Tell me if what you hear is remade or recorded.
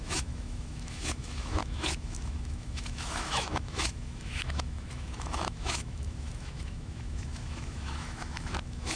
remade